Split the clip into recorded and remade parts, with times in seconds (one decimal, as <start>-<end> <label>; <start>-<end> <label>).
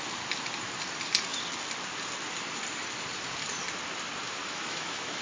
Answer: 0.0-4.4 recorded; 4.4-5.2 remade